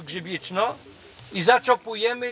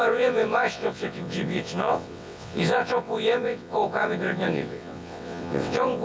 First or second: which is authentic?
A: first